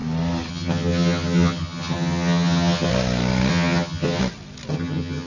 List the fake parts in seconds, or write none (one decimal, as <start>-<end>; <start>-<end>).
0.5-2.9; 3.5-4.2; 4.7-5.3